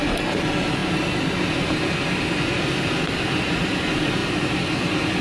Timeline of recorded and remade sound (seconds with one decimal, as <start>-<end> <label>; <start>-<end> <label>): 0.0-5.2 recorded